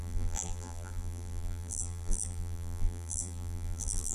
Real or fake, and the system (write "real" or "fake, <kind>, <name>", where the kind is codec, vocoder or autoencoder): fake, vocoder, BigVGAN v2